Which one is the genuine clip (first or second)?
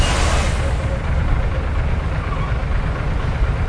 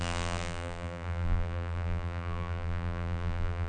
first